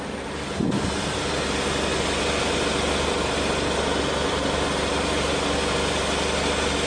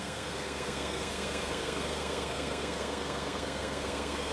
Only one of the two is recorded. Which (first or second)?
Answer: first